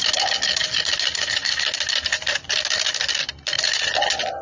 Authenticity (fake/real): real